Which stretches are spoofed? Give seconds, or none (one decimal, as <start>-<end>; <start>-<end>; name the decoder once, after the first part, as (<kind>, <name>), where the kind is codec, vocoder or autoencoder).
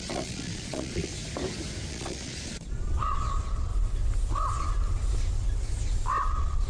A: 0.0-1.1 (vocoder, Vocos); 1.9-3.7; 6.3-6.7